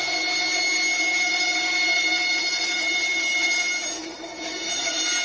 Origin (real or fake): real